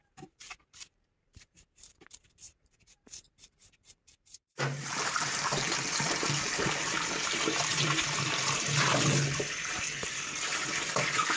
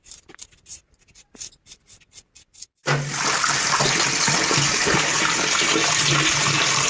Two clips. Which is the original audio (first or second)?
second